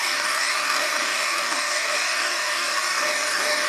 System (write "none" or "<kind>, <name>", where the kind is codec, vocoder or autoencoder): codec, DAC